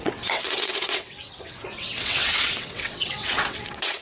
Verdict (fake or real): fake